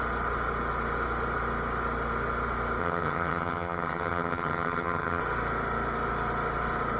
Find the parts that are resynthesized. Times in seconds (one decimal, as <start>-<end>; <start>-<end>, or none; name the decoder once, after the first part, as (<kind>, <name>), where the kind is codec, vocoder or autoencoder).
2.8-5.2 (vocoder, HiFi-GAN)